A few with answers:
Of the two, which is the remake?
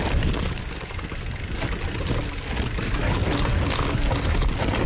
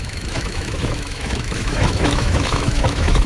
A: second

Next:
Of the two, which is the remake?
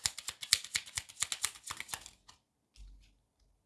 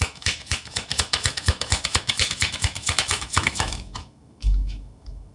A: second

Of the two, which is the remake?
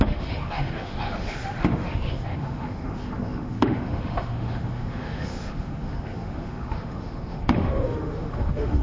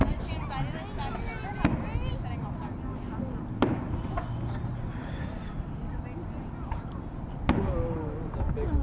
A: first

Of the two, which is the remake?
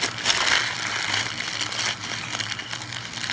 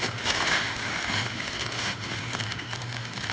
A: second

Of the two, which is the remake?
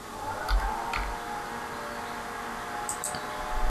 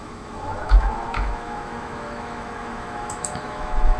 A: second